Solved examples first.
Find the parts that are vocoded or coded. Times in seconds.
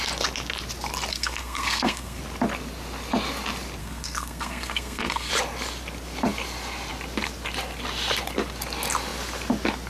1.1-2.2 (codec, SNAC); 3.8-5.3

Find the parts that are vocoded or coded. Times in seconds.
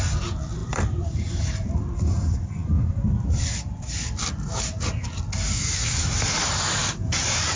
0.6-2.2 (vocoder, BigVGAN v2); 2.6-5.0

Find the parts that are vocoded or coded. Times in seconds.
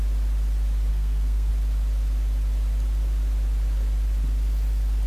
0.9-1.5 (codec, SNAC)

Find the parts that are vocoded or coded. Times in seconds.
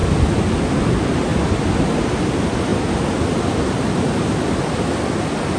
none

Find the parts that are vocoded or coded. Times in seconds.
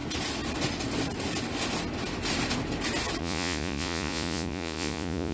3.2-5.3 (vocoder, Vocos)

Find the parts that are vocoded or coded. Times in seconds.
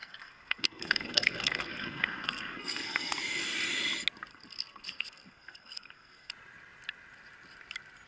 0.0-3.2 (codec, SNAC); 4.3-6.3